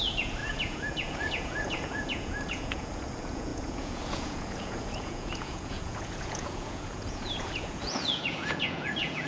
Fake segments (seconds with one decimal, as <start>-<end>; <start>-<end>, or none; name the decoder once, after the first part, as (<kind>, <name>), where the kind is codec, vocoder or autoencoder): 0.0-9.3 (vocoder, Vocos)